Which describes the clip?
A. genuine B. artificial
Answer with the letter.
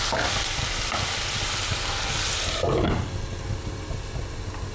A